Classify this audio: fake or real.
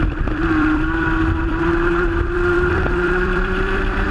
fake